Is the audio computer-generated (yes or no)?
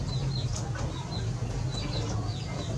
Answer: no